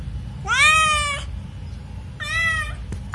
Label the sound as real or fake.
real